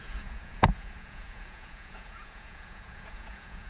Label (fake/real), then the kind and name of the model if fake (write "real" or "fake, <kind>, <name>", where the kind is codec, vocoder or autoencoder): fake, vocoder, Vocos